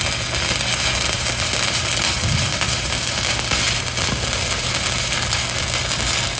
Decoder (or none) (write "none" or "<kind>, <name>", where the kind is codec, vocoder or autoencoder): none